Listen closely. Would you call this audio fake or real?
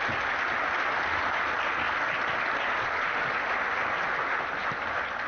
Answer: real